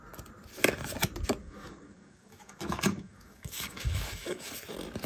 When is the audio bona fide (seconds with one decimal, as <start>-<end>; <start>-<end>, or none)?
0.0-1.4; 4.5-5.1